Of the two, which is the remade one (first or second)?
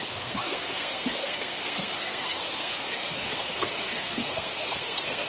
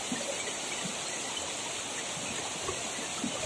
first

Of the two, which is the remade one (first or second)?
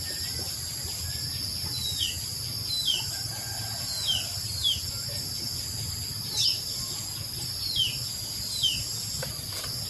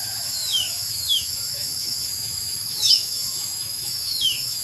second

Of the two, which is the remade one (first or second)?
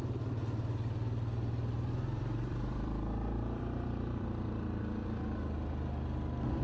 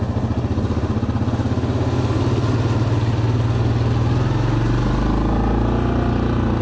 first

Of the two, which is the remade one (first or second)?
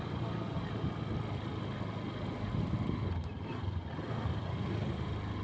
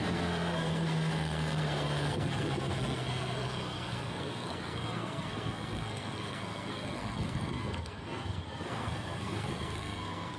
second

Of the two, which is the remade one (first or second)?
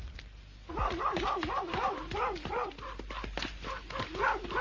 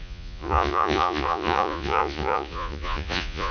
second